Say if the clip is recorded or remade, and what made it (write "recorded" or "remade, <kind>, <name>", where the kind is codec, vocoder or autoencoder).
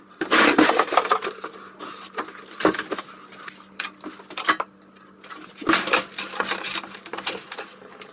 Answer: recorded